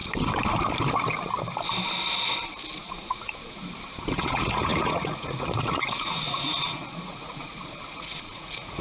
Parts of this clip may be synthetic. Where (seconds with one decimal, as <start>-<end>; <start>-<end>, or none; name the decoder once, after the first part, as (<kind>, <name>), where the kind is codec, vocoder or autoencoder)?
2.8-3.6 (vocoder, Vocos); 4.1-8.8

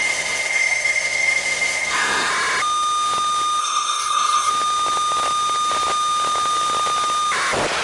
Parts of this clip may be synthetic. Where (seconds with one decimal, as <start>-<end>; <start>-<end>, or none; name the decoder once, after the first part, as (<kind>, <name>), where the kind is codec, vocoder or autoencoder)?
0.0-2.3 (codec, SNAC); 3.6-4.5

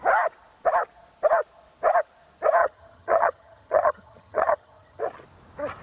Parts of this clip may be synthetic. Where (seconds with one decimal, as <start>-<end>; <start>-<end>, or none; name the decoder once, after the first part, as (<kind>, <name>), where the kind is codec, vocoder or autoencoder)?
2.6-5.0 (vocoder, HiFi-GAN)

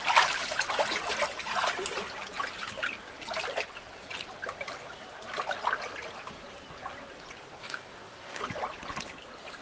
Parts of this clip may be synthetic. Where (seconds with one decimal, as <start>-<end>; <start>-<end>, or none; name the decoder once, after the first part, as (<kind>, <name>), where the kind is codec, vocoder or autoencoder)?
7.6-8.4 (codec, DAC)